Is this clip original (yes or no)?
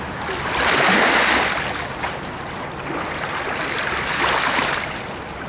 yes